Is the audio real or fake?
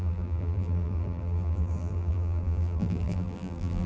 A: fake